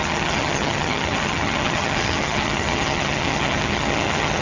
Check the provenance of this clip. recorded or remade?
remade